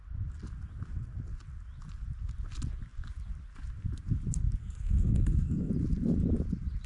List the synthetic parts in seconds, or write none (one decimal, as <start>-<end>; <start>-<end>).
4.6-5.7